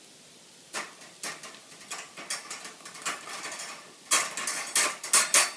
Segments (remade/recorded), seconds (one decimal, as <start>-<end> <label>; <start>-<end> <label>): 0.0-5.6 recorded